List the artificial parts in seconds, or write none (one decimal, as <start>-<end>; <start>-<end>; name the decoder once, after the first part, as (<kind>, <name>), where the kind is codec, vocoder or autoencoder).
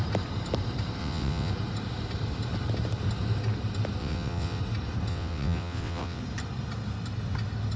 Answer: 1.0-1.5 (vocoder, WaveNeXt); 4.0-4.6; 5.1-6.2